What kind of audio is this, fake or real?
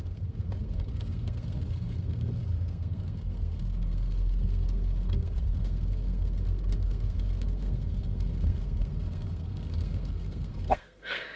fake